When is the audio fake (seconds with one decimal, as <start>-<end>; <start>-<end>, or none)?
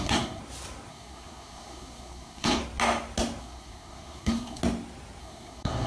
0.0-0.4; 0.9-2.6; 3.4-4.6; 5.2-5.9